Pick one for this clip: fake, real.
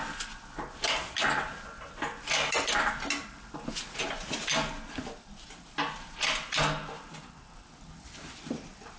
real